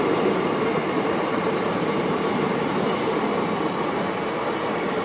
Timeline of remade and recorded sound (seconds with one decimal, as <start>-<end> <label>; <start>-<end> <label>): 0.0-0.7 recorded; 0.7-3.6 remade; 3.6-5.0 recorded